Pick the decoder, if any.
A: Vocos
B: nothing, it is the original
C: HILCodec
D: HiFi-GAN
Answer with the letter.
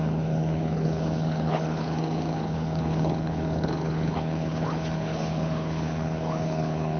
C